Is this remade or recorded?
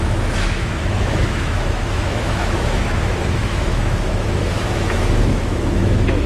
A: remade